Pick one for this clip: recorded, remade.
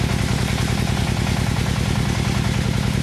recorded